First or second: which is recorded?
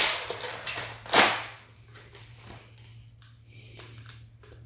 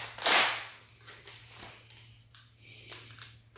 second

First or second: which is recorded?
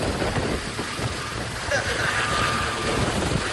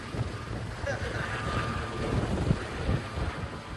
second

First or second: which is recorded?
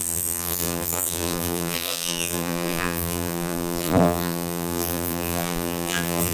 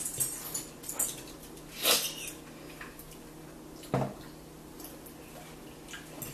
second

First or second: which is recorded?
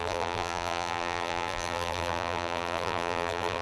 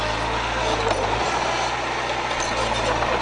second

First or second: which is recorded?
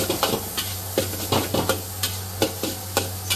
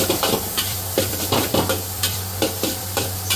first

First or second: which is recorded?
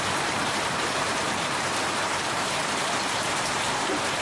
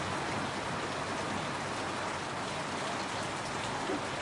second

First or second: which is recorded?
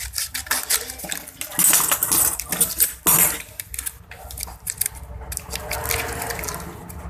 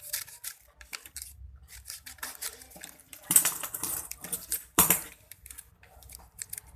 first